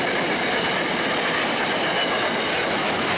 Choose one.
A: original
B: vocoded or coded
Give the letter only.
A